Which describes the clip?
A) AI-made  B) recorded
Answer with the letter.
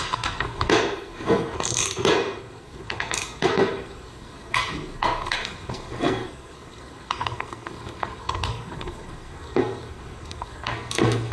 A